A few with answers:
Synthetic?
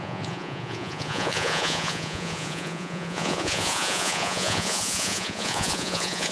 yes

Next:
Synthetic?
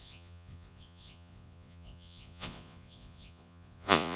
yes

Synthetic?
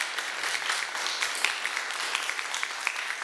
no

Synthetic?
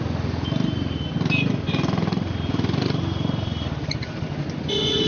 no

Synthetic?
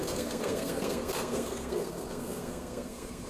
yes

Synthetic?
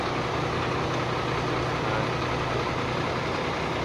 no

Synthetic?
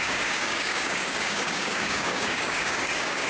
yes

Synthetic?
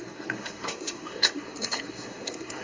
yes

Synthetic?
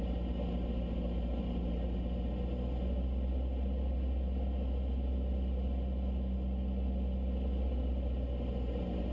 no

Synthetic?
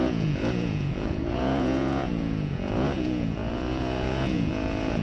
yes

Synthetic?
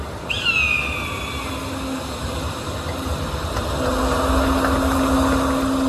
no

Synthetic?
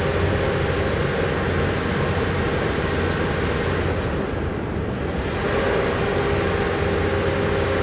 no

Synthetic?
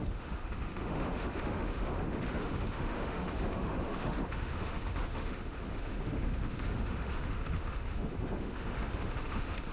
yes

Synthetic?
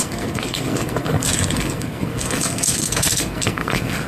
yes